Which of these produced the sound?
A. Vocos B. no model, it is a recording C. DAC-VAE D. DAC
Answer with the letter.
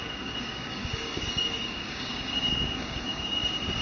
D